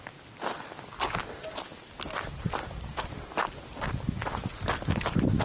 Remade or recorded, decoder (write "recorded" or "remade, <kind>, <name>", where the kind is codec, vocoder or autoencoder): recorded